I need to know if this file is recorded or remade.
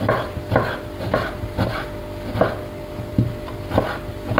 recorded